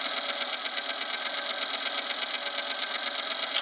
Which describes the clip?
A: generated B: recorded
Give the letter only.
B